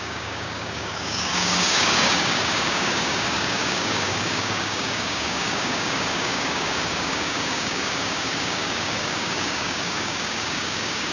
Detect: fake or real fake